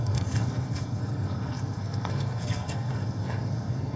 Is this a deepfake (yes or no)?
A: yes